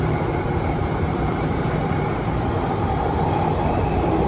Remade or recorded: remade